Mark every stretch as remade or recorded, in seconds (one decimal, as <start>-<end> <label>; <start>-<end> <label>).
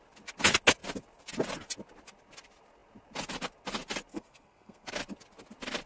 0.0-4.1 recorded; 4.1-4.9 remade; 4.9-5.9 recorded